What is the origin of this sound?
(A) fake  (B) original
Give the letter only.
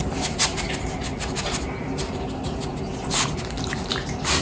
B